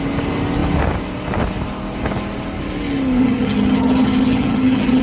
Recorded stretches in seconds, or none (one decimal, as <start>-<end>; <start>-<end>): 0.0-3.2